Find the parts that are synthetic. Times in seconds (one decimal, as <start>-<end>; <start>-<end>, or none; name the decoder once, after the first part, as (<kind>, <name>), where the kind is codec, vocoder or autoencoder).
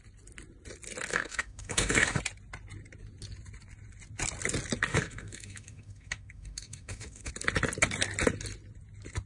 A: 1.1-2.2 (autoencoder, DAC-VAE); 4.9-7.3